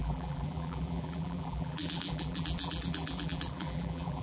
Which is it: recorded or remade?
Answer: remade